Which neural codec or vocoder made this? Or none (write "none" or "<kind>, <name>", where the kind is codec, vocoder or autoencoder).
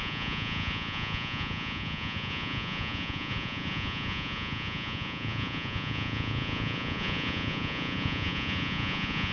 vocoder, Vocos